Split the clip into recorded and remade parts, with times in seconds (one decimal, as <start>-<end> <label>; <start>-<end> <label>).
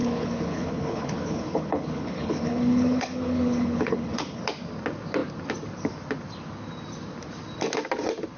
0.0-4.4 remade; 4.4-8.4 recorded